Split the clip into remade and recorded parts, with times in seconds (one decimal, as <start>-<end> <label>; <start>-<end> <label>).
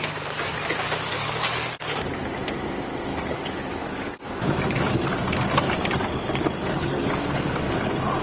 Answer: 0.0-1.1 recorded; 1.1-2.2 remade; 2.2-3.1 recorded; 3.1-5.1 remade; 5.1-6.6 recorded; 6.6-7.5 remade; 7.5-8.2 recorded